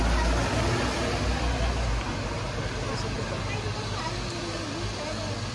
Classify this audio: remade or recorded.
recorded